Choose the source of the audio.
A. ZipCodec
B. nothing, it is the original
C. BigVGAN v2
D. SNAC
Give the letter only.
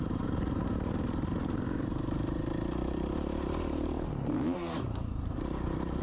C